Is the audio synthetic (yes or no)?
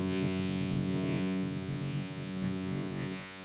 yes